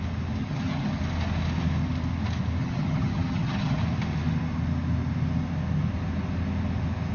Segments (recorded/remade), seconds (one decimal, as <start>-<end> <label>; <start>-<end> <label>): 0.0-0.4 recorded; 0.4-1.0 remade; 1.0-2.6 recorded; 2.6-3.8 remade; 3.8-7.1 recorded